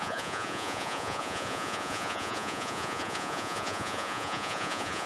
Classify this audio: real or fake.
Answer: fake